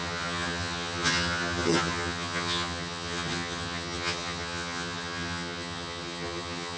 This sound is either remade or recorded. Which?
remade